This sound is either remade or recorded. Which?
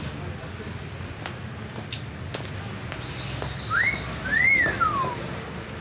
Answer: recorded